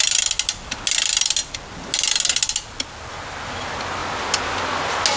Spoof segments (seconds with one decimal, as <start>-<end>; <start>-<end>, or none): none

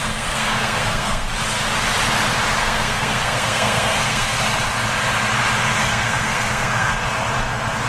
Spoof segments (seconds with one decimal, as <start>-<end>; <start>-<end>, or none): 0.0-1.3; 2.6-4.4; 5.8-6.9

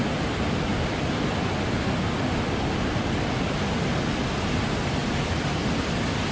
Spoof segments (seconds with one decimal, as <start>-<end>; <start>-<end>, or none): none

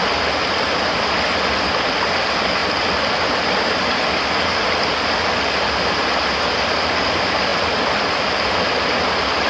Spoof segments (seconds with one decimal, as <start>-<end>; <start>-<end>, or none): none